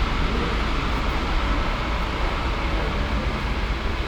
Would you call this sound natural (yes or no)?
yes